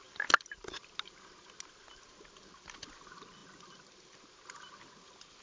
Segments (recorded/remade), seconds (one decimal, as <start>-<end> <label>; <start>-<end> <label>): 0.0-5.4 recorded